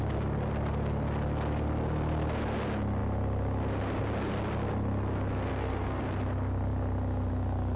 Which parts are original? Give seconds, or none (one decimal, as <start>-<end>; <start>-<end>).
0.0-5.5; 6.0-7.8